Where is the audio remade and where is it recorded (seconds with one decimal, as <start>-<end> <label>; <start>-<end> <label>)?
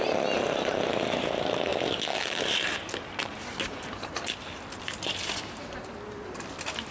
0.0-6.9 recorded